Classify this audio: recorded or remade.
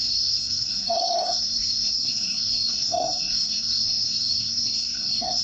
remade